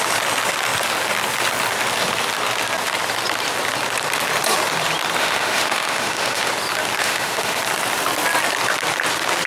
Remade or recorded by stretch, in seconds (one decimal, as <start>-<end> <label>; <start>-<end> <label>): 0.0-5.2 recorded; 5.2-6.5 remade; 6.5-7.0 recorded; 7.0-7.6 remade; 7.6-9.5 recorded